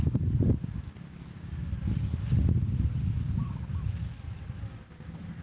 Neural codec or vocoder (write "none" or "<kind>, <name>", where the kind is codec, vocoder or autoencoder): none